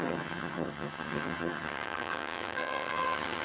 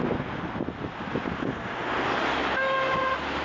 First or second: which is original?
second